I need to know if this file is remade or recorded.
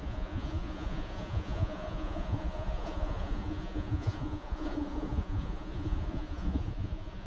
remade